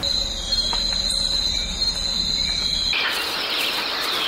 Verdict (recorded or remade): recorded